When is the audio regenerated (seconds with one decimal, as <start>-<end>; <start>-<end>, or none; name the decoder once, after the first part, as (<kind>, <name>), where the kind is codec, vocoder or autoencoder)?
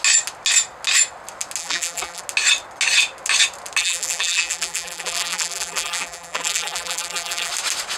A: 1.6-2.2 (vocoder, BigVGAN v2); 3.8-7.5